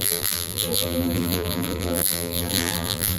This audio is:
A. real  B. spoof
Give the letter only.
B